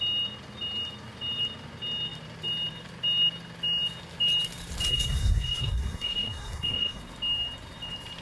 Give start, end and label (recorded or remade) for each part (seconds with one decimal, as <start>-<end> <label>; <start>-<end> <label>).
0.0-4.9 recorded; 4.9-7.0 remade; 7.0-8.2 recorded